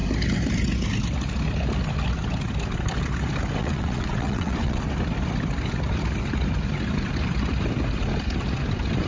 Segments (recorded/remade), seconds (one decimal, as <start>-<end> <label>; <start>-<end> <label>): 0.0-3.6 recorded; 3.6-4.8 remade; 4.8-9.1 recorded

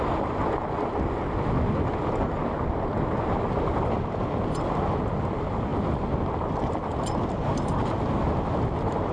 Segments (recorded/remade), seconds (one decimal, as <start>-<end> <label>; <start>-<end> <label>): 0.0-9.1 recorded

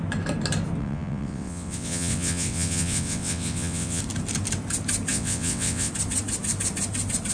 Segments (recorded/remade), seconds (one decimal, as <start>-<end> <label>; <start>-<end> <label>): 0.0-0.8 recorded; 0.8-4.0 remade; 4.0-5.1 recorded; 5.1-5.9 remade; 5.9-7.3 recorded

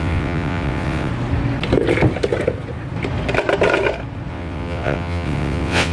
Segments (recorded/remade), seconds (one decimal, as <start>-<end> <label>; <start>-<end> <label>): 0.0-1.1 remade; 1.1-4.3 recorded; 4.3-5.9 remade

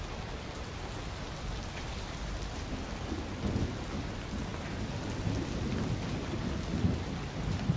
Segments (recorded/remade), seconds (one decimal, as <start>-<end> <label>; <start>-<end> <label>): 0.0-7.8 recorded